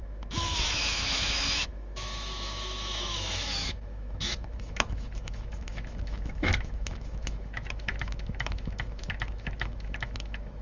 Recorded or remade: remade